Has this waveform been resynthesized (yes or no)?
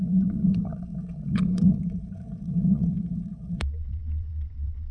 yes